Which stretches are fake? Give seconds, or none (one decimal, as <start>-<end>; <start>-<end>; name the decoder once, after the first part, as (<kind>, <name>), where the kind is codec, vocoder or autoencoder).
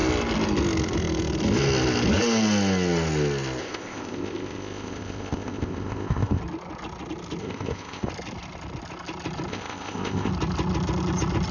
3.6-6.4 (codec, ZipCodec); 7.4-8.1; 9.5-10.3